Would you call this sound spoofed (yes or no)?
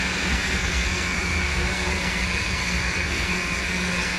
yes